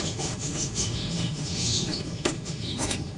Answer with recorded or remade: remade